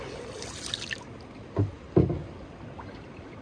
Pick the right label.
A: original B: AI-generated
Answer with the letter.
A